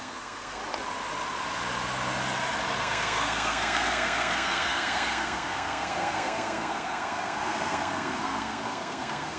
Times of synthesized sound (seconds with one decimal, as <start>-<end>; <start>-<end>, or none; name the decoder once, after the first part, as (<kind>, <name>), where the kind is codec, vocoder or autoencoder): 0.0-0.6 (codec, SNAC); 2.8-9.4